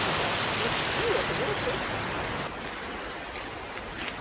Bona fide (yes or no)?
yes